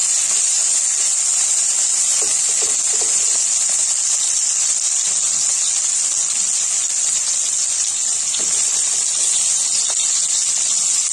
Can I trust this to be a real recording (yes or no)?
yes